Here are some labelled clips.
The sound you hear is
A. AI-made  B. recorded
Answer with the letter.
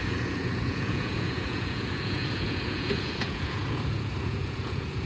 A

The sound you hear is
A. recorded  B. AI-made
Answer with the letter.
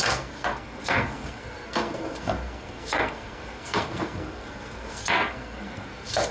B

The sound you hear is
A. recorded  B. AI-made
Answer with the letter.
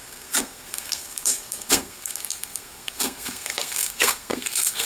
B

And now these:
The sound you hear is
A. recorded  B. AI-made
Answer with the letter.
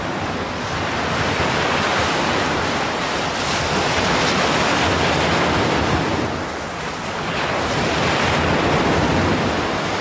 A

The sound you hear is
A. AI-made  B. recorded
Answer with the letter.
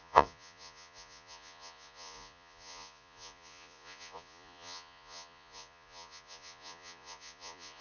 A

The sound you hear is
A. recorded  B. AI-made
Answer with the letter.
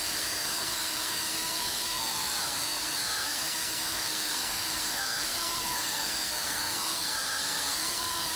B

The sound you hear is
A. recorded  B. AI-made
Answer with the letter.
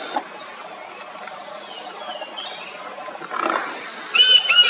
A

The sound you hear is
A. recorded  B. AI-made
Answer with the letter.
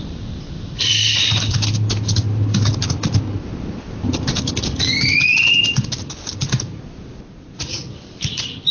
B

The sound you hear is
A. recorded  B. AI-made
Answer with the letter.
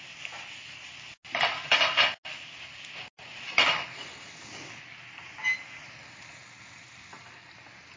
A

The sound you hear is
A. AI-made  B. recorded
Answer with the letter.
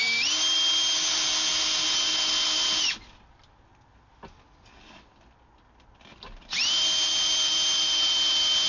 B